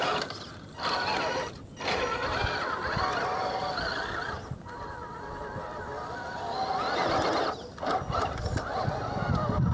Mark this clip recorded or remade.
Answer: recorded